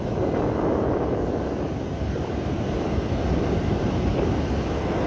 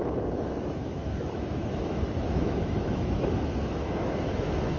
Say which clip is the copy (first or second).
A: second